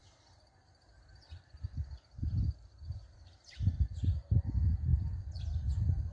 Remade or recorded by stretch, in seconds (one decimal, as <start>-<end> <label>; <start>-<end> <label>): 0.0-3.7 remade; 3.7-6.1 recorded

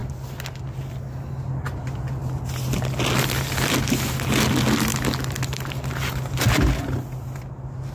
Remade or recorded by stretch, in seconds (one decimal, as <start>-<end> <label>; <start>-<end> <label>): 0.0-7.9 recorded

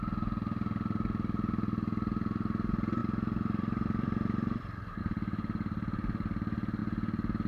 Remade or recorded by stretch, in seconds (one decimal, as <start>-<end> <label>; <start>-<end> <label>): 0.0-3.0 recorded; 3.0-5.0 remade; 5.0-7.5 recorded

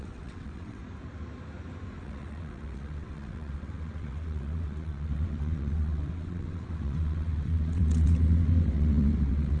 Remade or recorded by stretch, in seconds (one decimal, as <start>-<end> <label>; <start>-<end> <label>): 0.0-0.8 remade; 0.8-2.0 recorded; 2.0-9.6 remade

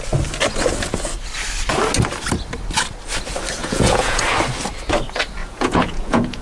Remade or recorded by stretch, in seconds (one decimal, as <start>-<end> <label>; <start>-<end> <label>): 0.0-3.6 recorded; 3.6-4.2 remade; 4.2-5.4 recorded; 5.4-6.4 remade

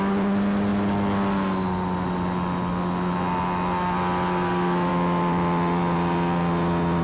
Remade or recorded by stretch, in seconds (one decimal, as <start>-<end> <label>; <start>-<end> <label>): 0.0-7.0 recorded